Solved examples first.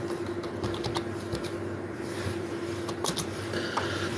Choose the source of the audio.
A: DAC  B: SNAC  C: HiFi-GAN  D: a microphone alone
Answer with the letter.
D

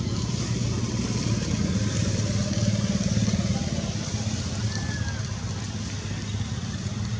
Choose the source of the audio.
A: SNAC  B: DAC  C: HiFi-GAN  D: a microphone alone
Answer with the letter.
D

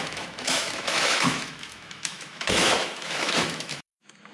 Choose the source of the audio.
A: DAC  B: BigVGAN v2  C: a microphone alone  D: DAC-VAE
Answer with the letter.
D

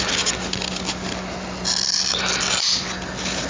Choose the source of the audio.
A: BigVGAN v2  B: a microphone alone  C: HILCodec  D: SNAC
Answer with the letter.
B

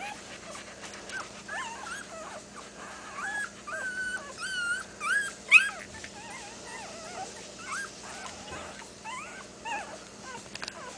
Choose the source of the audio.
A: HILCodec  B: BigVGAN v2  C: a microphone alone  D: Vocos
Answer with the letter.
C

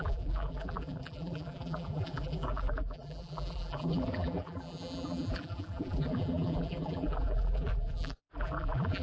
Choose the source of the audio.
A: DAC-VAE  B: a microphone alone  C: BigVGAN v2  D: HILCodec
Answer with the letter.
C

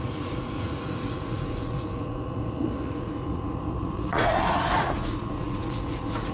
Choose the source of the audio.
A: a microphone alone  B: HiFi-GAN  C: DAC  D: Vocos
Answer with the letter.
D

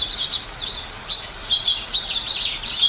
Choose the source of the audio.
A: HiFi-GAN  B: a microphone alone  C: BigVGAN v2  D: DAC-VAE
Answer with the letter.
C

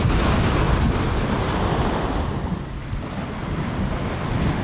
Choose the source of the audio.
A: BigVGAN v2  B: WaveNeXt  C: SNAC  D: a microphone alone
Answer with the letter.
D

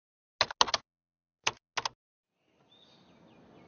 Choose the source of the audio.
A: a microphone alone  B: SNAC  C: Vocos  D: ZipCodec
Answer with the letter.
A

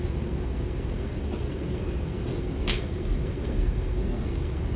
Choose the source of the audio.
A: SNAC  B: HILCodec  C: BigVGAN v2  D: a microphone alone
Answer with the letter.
A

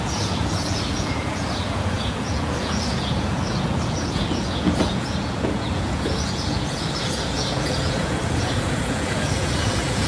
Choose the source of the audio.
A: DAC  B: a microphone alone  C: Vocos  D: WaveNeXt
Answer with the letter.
C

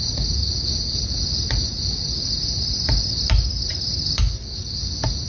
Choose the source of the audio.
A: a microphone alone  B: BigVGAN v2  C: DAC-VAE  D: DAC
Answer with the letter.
A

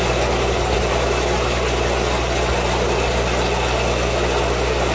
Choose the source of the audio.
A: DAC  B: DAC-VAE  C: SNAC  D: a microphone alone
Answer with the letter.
D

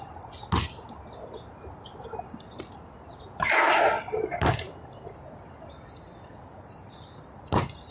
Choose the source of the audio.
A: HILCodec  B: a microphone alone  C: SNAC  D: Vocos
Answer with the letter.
B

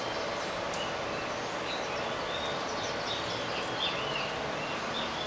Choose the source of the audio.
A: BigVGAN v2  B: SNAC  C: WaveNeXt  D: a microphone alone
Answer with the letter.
D